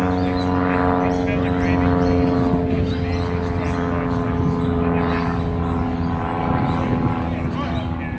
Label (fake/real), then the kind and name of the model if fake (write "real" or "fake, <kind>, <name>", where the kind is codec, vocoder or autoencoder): real